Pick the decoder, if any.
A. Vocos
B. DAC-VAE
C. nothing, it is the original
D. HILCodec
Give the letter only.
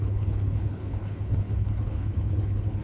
D